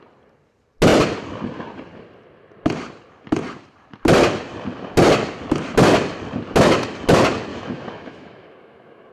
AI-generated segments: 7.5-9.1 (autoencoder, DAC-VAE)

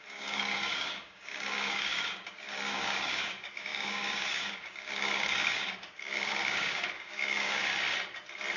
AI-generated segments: 0.0-7.7 (codec, DAC)